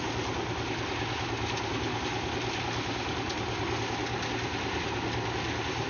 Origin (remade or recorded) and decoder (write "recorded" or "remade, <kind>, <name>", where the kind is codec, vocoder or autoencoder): recorded